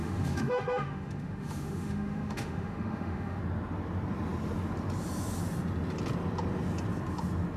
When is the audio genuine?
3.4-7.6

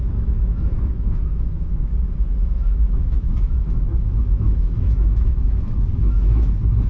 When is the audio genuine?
1.9-2.5

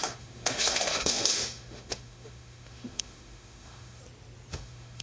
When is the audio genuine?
4.0-4.5

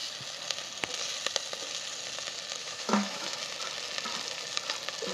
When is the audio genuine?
0.0-2.6; 3.4-5.1

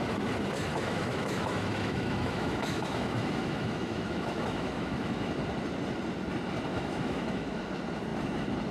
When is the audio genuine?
0.0-0.7; 5.3-6.7; 7.6-8.7

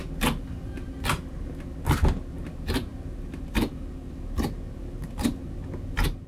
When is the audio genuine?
0.0-6.3

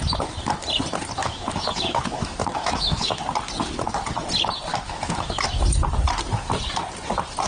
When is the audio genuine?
0.0-1.2; 3.2-4.7; 5.4-7.5

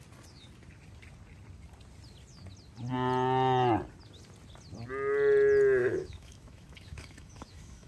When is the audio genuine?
0.0-5.8